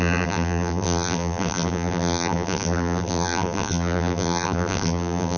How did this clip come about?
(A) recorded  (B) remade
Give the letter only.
B